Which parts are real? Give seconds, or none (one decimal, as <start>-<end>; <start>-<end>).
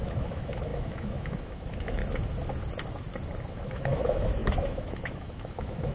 2.0-3.5